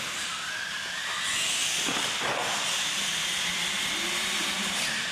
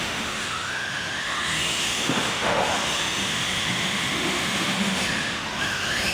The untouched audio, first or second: first